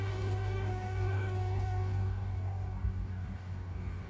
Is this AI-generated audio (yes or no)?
yes